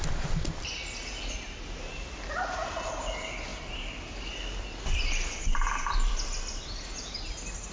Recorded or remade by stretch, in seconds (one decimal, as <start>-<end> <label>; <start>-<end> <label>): 0.0-7.7 recorded